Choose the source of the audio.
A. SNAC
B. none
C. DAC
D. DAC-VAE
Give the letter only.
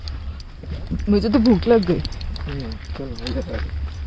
B